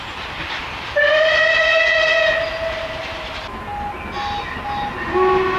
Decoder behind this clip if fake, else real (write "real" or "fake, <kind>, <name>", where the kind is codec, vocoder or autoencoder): real